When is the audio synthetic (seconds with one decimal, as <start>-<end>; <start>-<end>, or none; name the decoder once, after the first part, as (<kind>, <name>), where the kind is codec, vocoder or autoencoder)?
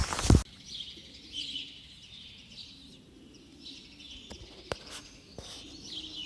none